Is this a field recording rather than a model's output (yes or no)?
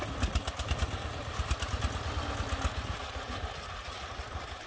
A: yes